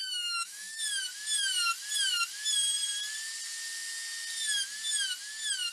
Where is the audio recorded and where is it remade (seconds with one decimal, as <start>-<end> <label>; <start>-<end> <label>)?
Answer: 0.0-0.8 remade; 0.8-5.7 recorded

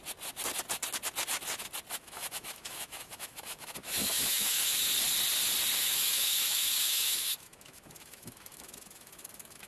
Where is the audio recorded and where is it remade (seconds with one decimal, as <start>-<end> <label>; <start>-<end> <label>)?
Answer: 0.0-1.9 recorded; 1.9-4.9 remade; 4.9-5.8 recorded; 5.8-9.7 remade

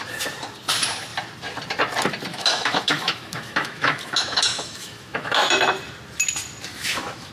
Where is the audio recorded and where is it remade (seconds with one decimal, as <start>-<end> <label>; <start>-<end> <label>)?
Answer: 0.0-2.3 recorded; 2.3-5.5 remade; 5.5-6.7 recorded; 6.7-7.3 remade

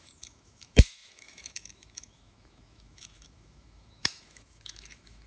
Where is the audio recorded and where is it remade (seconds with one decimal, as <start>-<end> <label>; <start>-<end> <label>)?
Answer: 0.0-5.3 remade